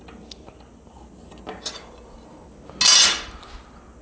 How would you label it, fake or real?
real